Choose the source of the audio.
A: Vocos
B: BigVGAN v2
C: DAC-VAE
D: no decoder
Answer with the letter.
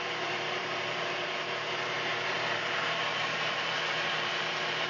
B